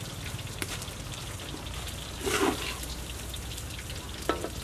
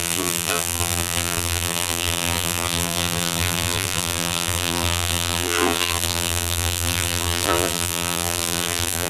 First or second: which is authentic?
first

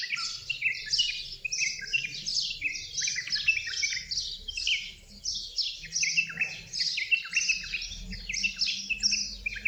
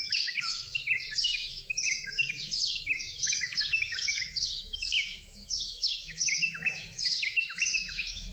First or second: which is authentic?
first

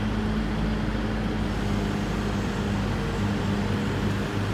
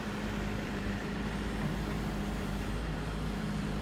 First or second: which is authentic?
first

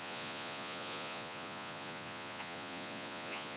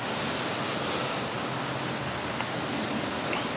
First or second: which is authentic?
second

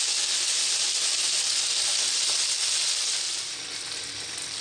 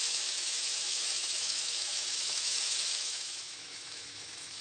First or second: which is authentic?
first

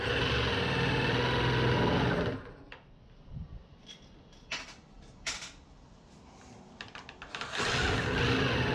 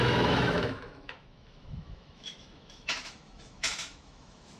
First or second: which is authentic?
first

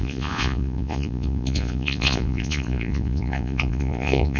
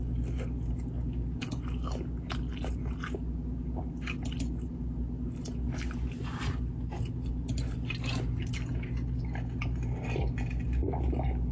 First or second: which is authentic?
second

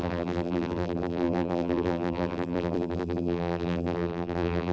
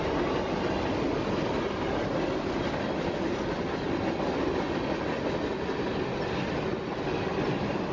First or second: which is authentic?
second